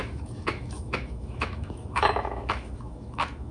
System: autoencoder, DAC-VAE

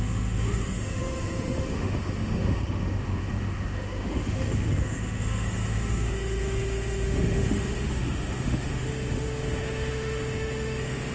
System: autoencoder, DAC-VAE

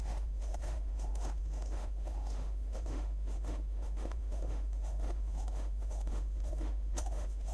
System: autoencoder, DAC-VAE